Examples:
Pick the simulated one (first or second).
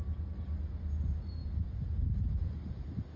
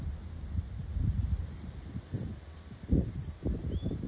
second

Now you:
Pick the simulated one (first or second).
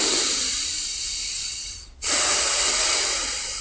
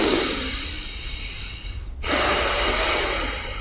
first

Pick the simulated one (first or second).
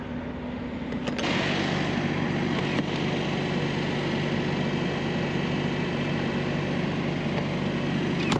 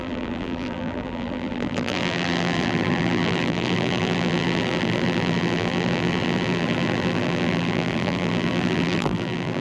second